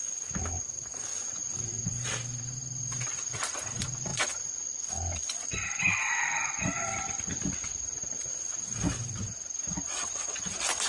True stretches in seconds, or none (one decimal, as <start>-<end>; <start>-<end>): 0.0-10.9